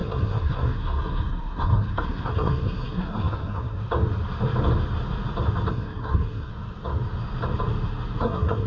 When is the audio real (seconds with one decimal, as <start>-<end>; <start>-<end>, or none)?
3.8-5.7; 6.5-8.2